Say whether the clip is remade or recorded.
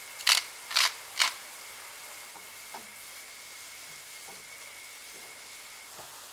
recorded